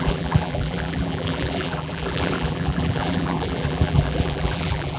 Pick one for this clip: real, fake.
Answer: fake